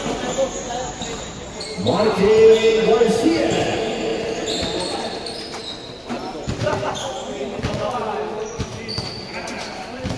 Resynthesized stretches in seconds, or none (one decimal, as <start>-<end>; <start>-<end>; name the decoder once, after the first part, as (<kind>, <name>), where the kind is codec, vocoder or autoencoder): none